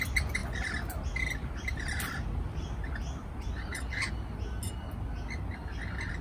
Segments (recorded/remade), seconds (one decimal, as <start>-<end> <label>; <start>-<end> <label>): 0.0-6.2 recorded